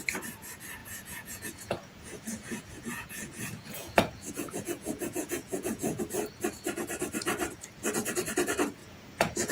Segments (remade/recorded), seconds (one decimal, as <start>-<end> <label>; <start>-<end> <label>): 0.0-0.8 recorded; 0.8-6.0 remade; 6.0-8.8 recorded; 8.8-9.5 remade